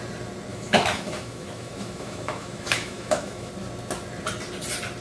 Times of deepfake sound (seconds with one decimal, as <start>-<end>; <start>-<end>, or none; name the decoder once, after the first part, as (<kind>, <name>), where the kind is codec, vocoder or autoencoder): 0.5-3.5 (autoencoder, DAC-VAE)